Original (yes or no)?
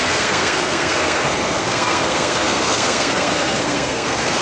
no